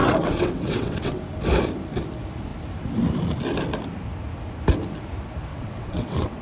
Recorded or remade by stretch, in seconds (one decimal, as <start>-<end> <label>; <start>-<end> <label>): 0.0-1.2 remade; 1.2-5.5 recorded; 5.5-6.4 remade